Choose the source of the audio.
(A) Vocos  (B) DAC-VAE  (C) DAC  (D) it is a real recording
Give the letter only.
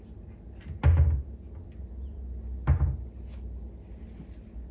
D